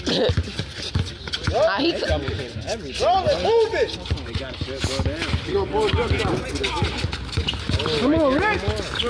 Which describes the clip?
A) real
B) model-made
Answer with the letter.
A